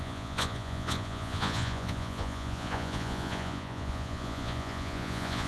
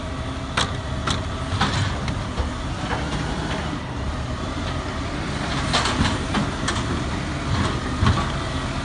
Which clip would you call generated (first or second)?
first